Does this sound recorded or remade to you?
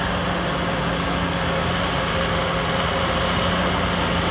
recorded